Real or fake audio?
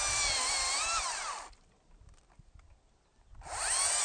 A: real